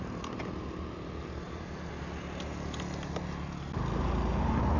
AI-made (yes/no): no